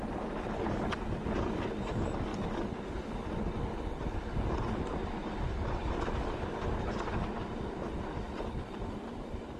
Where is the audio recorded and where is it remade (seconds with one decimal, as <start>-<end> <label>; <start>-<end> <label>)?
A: 0.0-9.6 recorded